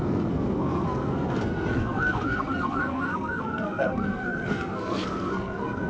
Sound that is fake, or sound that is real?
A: fake